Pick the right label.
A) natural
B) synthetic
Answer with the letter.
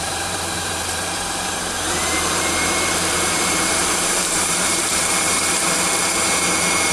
B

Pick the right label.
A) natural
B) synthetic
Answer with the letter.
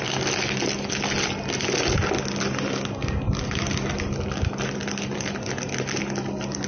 A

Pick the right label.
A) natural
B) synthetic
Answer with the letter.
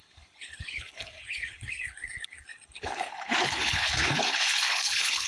B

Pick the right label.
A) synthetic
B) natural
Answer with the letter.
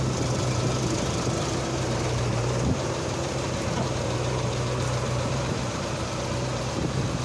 A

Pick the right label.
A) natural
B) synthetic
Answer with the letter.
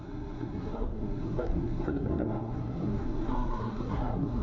B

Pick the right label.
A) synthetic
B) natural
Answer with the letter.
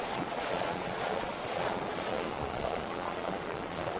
A